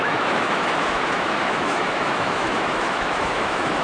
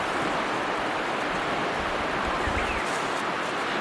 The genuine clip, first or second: second